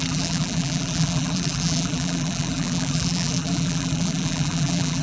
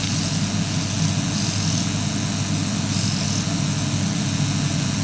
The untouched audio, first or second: second